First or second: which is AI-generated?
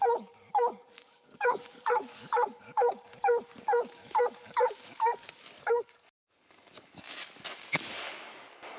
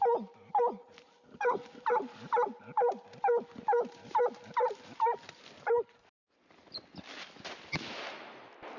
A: first